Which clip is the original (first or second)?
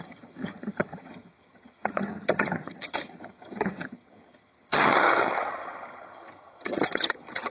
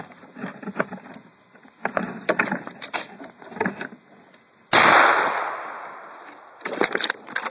second